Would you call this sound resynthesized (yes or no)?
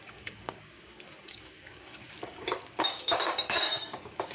yes